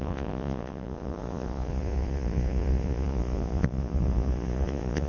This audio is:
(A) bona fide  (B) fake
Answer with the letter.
B